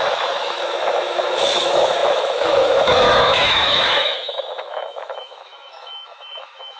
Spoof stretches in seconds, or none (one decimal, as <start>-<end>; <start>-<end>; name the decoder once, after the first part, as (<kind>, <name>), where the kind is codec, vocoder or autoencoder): 0.0-6.8 (autoencoder, DAC-VAE)